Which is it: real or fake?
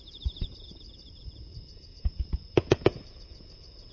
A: fake